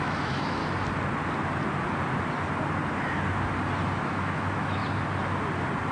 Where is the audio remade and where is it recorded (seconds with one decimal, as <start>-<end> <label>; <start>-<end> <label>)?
0.0-0.6 remade; 0.6-4.0 recorded; 4.0-4.8 remade; 4.8-5.9 recorded